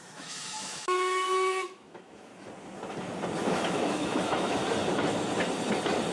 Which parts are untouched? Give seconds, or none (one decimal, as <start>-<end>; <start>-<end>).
2.3-3.5; 4.6-6.1